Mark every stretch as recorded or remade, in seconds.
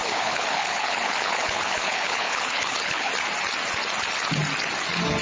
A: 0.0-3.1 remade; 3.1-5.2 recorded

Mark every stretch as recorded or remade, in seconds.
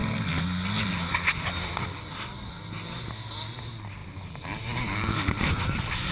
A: 0.0-4.0 recorded; 4.0-6.1 remade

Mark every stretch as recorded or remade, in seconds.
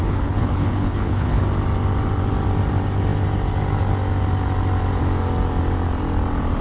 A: 0.0-1.4 remade; 1.4-6.6 recorded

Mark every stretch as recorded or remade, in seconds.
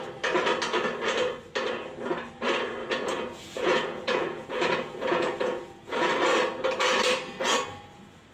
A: 0.0-2.8 recorded; 2.8-6.1 remade; 6.1-8.3 recorded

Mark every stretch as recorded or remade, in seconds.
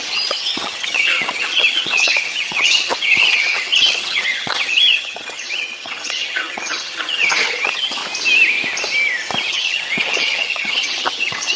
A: 0.0-8.0 remade; 8.0-9.5 recorded; 9.5-11.6 remade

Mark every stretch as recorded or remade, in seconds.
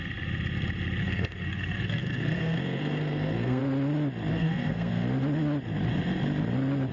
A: 0.0-1.0 recorded; 1.0-3.6 remade; 3.6-4.3 recorded; 4.3-4.9 remade; 4.9-6.9 recorded